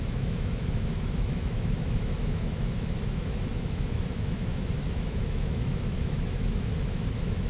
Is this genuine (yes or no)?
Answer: no